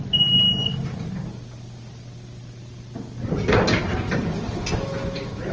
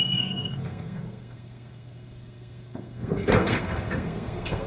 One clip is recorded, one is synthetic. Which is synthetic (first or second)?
second